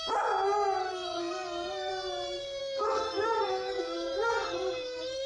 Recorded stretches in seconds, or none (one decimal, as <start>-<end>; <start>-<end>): 0.0-0.8; 1.9-2.6